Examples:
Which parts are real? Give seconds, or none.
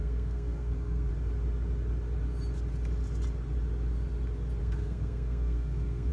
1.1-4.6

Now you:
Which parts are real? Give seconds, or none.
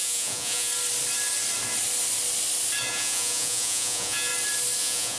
0.7-2.9; 4.3-4.8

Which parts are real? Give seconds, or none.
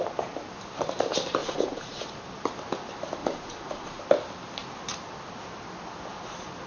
0.0-1.4; 2.0-3.2; 4.0-6.7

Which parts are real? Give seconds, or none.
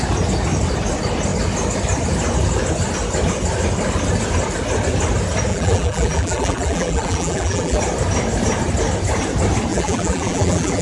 0.0-5.5; 7.8-9.7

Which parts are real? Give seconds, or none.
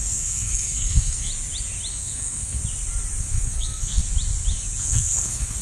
1.3-1.9; 2.6-3.2; 4.0-4.8